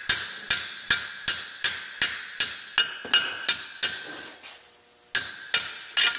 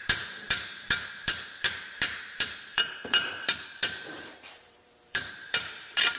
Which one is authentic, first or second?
first